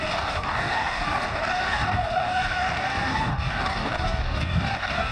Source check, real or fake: fake